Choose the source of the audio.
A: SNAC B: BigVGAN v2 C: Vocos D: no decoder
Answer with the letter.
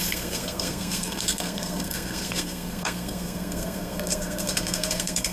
A